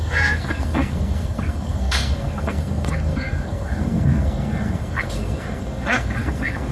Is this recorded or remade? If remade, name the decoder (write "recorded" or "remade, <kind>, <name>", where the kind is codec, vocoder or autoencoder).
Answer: remade, codec, SNAC